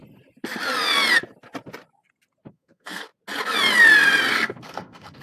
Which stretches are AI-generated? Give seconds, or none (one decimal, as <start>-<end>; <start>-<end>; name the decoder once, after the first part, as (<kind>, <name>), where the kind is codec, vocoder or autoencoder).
2.5-3.1 (codec, SNAC); 4.3-5.2